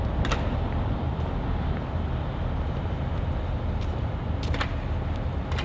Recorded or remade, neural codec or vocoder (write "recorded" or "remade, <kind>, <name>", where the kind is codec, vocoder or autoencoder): recorded